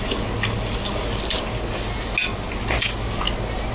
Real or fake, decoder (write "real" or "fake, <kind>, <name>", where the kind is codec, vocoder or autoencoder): real